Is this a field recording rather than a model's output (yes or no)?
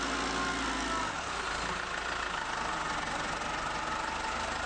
yes